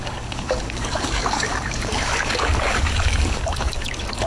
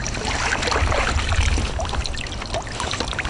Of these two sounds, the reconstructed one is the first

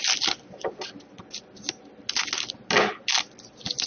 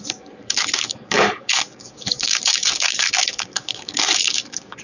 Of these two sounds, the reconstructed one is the second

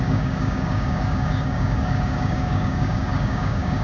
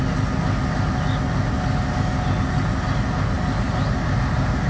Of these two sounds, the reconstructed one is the first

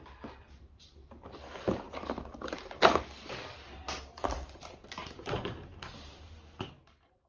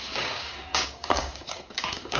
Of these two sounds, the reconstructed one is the second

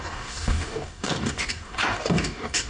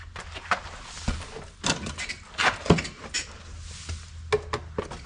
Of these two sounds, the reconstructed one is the first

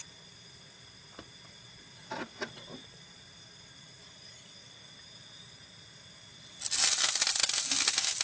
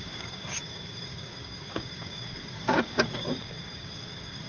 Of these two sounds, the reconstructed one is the second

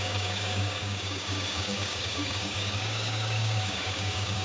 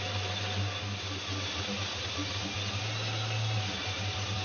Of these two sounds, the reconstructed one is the first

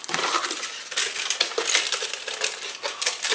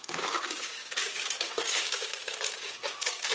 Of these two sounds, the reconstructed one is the second